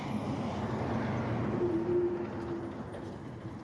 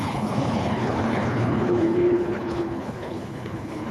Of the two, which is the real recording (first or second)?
first